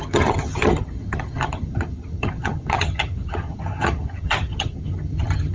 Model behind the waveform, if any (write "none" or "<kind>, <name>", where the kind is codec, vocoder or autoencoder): vocoder, HiFi-GAN